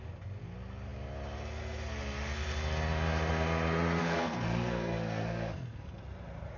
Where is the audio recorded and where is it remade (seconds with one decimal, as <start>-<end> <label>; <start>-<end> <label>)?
0.0-4.0 recorded; 4.0-6.0 remade; 6.0-6.6 recorded